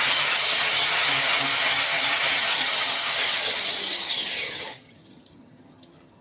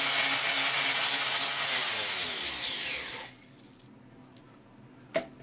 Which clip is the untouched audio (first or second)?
second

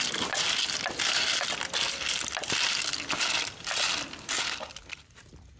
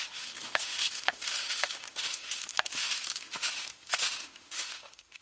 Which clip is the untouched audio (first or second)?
first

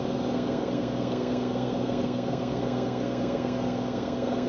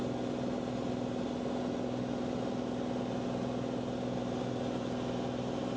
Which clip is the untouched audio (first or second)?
second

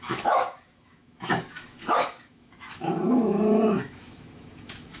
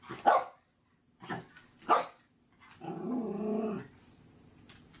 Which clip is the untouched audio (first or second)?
second